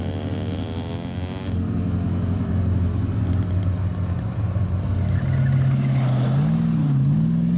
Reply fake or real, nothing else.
real